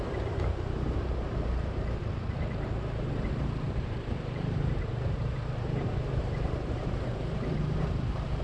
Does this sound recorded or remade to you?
remade